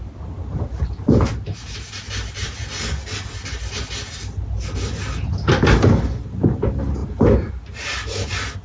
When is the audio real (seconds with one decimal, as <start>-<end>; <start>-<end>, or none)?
0.0-0.4; 2.7-7.0; 7.5-8.6